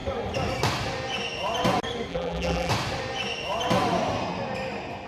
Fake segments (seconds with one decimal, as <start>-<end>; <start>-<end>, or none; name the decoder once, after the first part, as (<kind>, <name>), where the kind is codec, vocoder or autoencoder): 2.1-2.7 (vocoder, BigVGAN v2)